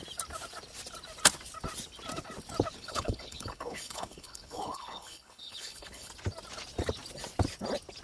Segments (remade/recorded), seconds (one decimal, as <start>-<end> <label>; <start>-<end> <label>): 0.0-2.8 recorded; 2.8-6.1 remade; 6.1-8.0 recorded